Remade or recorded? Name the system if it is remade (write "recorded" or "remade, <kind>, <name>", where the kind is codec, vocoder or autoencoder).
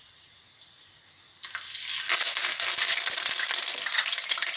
recorded